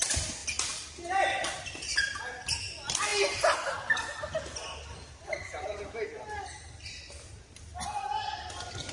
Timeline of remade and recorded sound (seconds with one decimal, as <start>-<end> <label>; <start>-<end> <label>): 0.0-8.9 recorded